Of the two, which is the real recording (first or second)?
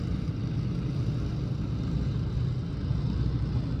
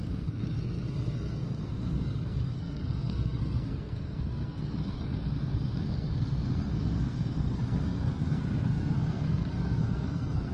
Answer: first